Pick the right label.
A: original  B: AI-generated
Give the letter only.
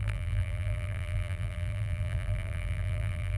B